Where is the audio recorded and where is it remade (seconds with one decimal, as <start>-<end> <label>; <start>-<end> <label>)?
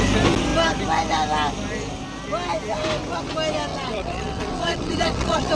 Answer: 0.0-3.7 recorded; 3.7-5.5 remade